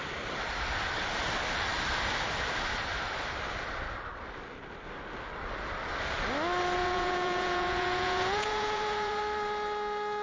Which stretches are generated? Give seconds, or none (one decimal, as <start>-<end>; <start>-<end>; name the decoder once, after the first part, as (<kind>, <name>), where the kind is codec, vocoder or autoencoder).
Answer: 6.8-9.2 (vocoder, Vocos)